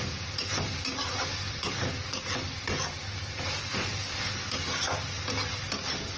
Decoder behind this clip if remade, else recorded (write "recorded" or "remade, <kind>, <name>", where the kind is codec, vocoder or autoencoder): recorded